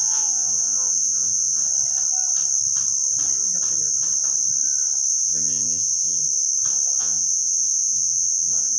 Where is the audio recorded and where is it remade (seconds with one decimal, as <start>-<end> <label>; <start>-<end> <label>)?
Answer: 0.0-1.6 remade; 1.6-5.1 recorded; 5.1-6.2 remade; 6.2-7.0 recorded; 7.0-8.8 remade